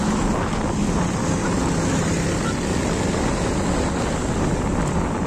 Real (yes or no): yes